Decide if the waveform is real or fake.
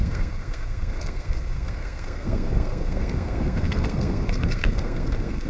fake